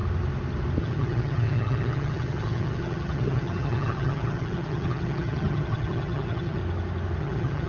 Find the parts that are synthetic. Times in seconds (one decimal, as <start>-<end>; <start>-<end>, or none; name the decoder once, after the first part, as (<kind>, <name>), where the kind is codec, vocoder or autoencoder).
0.8-6.6 (vocoder, HiFi-GAN); 7.2-7.7